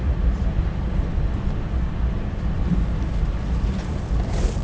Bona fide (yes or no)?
no